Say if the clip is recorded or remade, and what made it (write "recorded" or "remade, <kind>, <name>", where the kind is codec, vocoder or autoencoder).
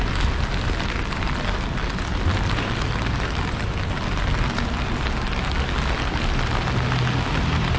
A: recorded